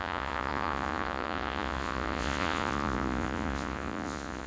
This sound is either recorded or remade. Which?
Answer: remade